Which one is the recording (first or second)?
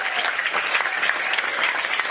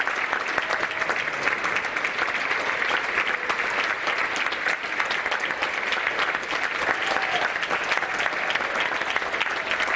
second